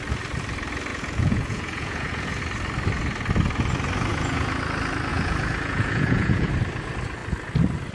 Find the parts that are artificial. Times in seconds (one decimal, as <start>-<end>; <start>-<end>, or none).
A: 0.9-2.4; 4.1-4.6; 5.1-6.5